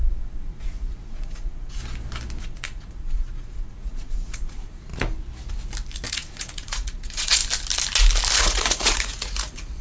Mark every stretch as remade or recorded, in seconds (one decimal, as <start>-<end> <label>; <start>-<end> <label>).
0.0-1.8 remade; 1.8-2.4 recorded; 2.4-4.9 remade; 4.9-6.1 recorded; 6.1-7.4 remade; 7.4-8.4 recorded; 8.4-9.8 remade